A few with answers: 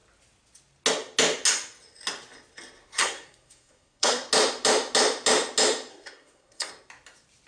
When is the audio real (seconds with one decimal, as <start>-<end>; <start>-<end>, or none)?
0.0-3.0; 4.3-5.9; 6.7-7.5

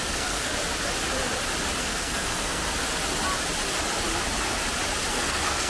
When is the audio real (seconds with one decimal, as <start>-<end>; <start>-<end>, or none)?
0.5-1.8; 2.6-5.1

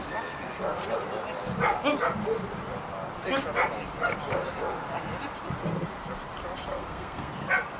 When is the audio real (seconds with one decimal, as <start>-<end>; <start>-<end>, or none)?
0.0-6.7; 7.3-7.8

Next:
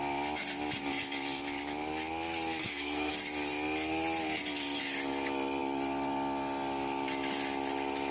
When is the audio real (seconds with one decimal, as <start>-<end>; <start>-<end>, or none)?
0.0-2.6; 3.1-8.1

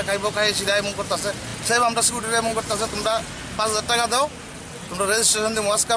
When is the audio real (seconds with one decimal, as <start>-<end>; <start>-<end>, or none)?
0.0-6.0

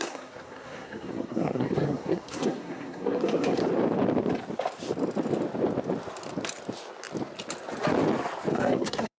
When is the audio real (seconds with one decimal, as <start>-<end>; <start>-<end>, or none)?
3.6-8.5

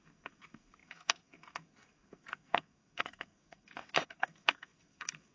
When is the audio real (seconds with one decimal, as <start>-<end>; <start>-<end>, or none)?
none

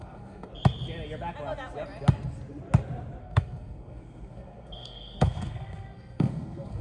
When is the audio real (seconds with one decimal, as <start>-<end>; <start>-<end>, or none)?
0.5-3.2